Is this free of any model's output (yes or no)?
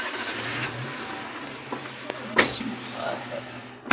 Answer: yes